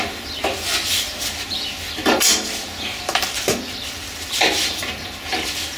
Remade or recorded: remade